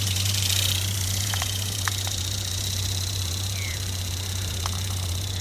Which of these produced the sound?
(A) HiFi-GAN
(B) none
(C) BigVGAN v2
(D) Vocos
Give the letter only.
C